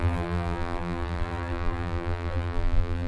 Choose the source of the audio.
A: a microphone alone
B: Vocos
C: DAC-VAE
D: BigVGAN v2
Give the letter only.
D